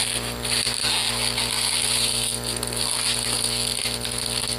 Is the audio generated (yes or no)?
no